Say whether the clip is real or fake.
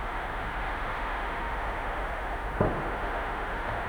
fake